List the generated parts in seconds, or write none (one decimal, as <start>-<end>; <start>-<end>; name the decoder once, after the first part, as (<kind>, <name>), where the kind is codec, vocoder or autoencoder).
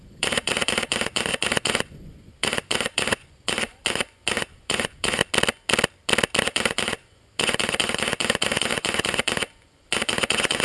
0.0-5.2 (vocoder, Vocos); 6.4-10.6